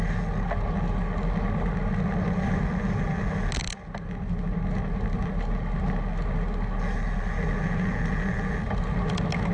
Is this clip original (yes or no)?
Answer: yes